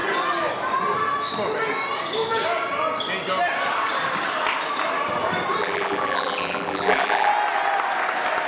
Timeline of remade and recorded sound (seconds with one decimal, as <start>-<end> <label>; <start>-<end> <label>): 0.0-5.6 recorded; 5.6-7.3 remade; 7.3-8.5 recorded